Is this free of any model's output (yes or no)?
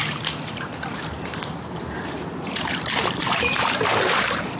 no